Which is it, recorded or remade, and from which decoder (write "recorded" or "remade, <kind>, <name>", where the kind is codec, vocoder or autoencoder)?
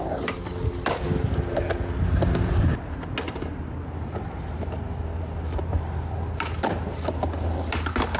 recorded